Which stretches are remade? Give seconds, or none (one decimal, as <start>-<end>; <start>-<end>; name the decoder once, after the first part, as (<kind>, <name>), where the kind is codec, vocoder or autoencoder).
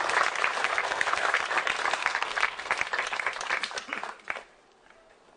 0.6-1.4 (codec, SNAC); 2.0-2.7